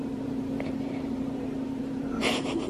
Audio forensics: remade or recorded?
remade